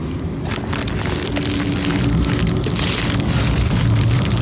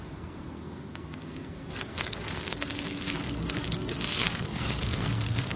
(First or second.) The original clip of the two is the first